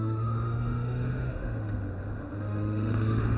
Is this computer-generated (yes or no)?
yes